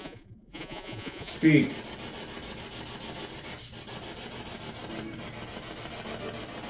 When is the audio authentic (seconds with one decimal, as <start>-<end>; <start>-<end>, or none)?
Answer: 1.3-6.7

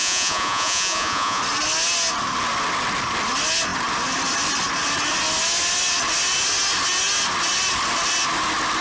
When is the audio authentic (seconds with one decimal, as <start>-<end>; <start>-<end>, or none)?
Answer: 1.4-8.8

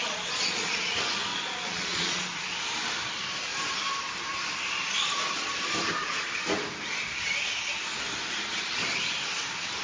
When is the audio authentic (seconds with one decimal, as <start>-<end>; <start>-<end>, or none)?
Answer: 0.9-1.3; 2.2-9.8

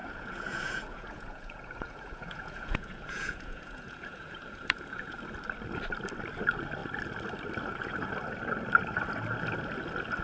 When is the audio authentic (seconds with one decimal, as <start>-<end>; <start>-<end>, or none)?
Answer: 5.2-10.2